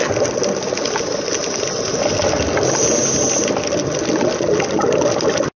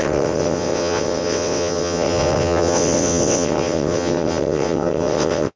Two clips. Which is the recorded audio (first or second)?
first